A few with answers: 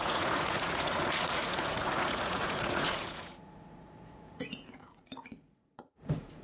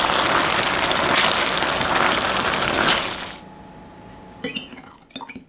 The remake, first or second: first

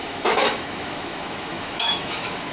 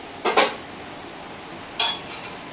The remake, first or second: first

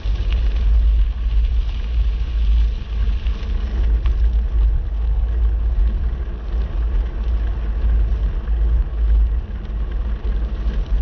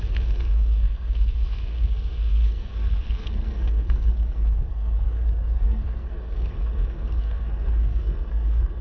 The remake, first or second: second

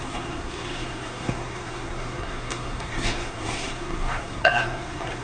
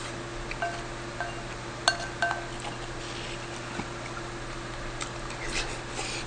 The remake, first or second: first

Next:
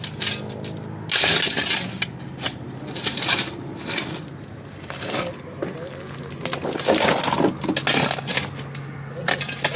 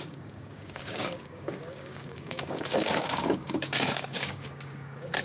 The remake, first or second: second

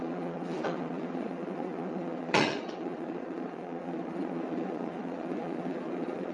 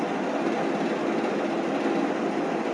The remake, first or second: first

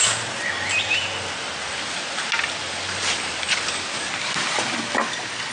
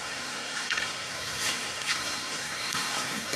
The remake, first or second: second